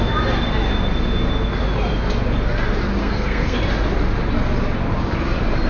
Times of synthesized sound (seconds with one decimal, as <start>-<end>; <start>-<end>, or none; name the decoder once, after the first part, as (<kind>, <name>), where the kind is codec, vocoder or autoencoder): 3.0-3.6 (codec, SNAC)